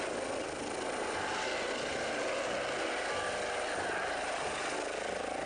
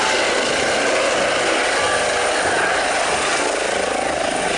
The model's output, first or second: second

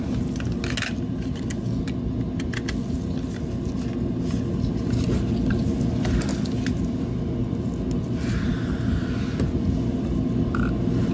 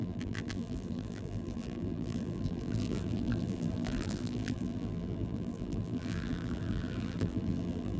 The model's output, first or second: second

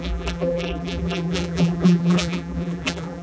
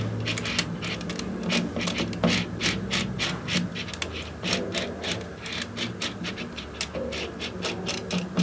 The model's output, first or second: first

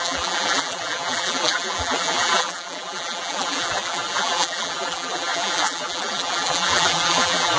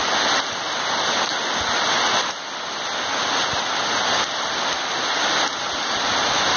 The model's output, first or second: first